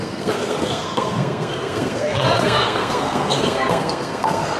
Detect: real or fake fake